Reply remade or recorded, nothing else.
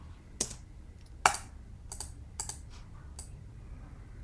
recorded